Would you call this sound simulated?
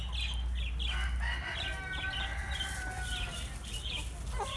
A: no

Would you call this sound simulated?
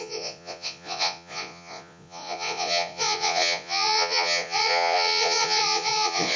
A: yes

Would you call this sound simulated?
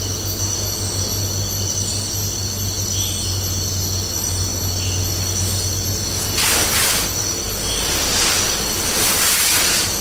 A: no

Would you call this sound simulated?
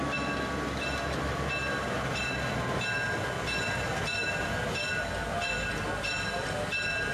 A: no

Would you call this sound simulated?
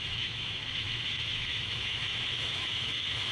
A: yes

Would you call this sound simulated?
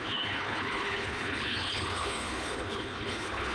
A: yes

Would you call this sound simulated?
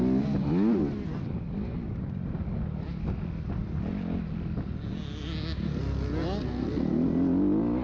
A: no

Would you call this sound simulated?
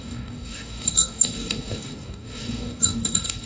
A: yes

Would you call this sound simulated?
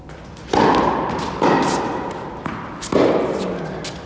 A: no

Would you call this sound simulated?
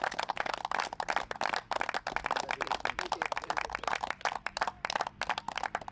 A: no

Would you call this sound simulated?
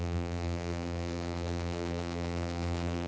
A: yes